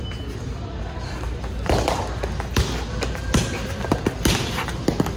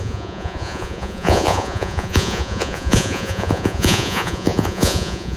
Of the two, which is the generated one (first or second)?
second